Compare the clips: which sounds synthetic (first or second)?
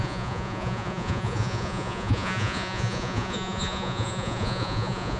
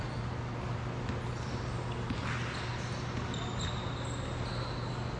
first